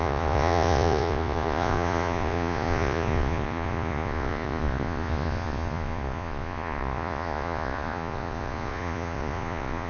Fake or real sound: fake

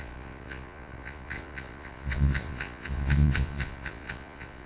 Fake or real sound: fake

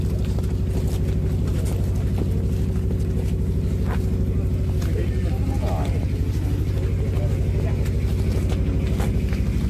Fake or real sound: real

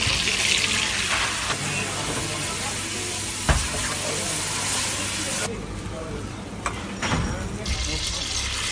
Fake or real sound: real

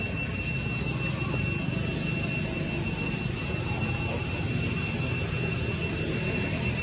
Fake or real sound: real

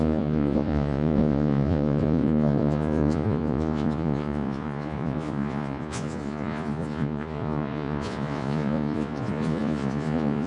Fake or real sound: fake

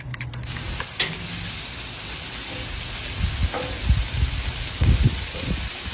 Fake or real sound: real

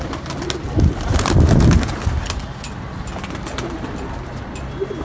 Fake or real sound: real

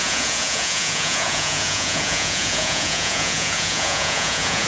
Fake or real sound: fake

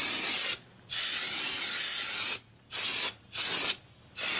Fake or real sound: real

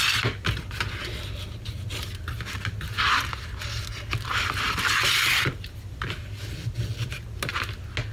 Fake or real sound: real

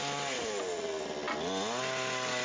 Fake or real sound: real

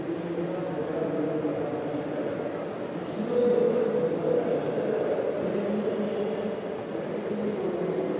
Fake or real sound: real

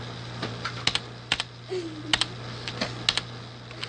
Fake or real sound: real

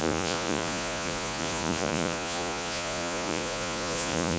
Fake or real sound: fake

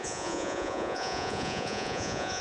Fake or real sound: fake